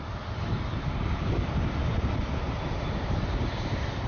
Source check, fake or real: fake